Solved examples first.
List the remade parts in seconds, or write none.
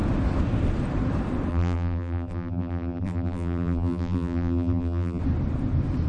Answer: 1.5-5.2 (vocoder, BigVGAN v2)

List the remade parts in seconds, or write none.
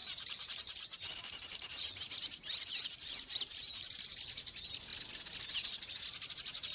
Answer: 0.0-4.0 (vocoder, BigVGAN v2)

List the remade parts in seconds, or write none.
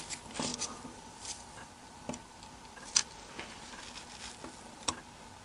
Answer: 0.5-3.7 (vocoder, BigVGAN v2)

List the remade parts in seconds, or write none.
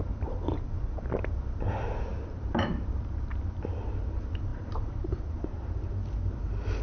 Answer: 2.1-2.7 (vocoder, BigVGAN v2); 4.5-5.8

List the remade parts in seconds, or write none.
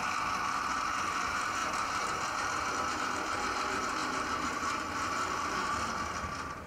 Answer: 0.0-6.7 (vocoder, BigVGAN v2)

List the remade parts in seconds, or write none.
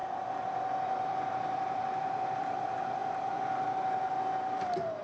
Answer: 0.0-2.6 (vocoder, BigVGAN v2); 3.0-4.1